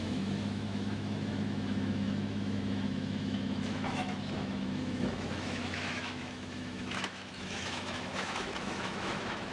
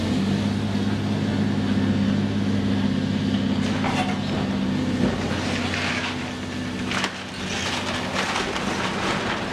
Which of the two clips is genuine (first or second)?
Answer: second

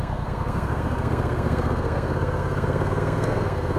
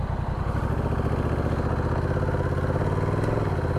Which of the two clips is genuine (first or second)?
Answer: second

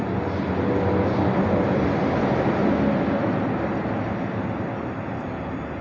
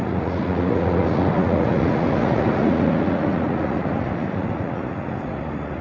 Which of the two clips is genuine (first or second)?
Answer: first